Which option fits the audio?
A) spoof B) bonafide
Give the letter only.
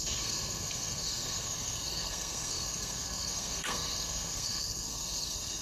A